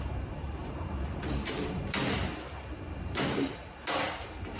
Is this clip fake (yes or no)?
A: yes